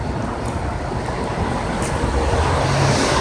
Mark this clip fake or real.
real